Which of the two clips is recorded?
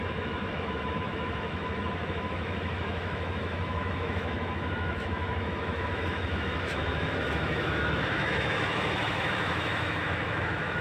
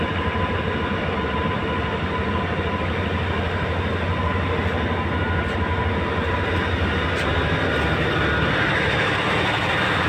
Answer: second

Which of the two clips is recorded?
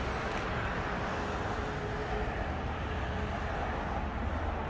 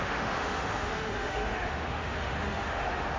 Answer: first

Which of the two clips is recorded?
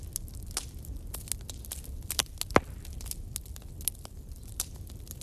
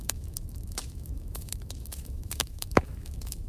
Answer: first